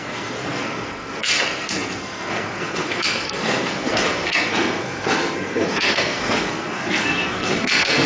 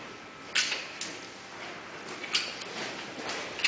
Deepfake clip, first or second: first